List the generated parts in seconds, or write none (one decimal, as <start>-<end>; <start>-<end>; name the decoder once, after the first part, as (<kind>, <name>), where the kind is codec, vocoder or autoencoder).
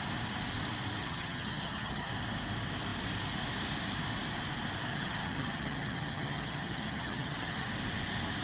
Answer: 1.0-2.1 (vocoder, HiFi-GAN); 4.9-7.7